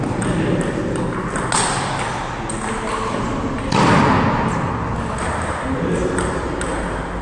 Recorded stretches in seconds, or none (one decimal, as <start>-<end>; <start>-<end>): 0.0-7.2